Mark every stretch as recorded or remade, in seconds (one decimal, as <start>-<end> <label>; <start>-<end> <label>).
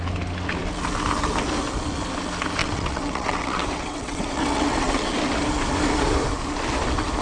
0.0-2.6 recorded; 2.6-4.9 remade; 4.9-7.2 recorded